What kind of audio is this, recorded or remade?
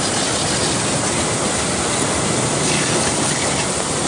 recorded